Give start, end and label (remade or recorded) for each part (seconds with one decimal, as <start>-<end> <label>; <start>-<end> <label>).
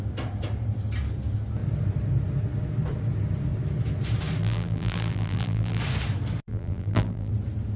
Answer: 0.0-4.4 recorded; 4.4-5.8 remade; 5.8-6.5 recorded; 6.5-7.3 remade; 7.3-7.8 recorded